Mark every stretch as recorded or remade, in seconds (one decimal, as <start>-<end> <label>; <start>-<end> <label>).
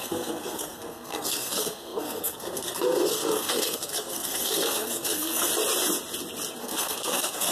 0.0-5.5 remade; 5.5-6.6 recorded; 6.6-7.5 remade